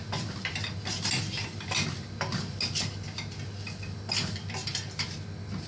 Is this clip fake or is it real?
real